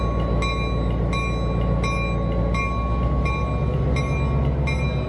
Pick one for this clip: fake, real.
real